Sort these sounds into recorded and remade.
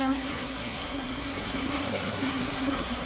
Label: remade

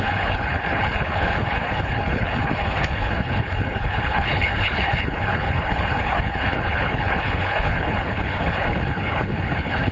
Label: remade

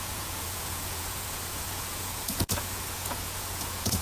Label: remade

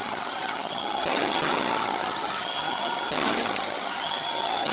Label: remade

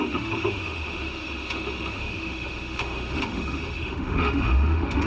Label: remade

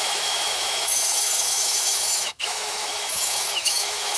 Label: remade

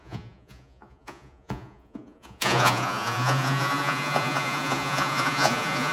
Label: remade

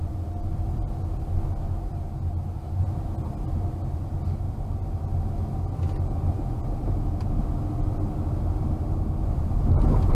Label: recorded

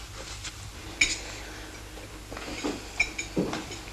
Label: recorded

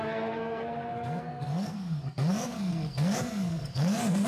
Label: remade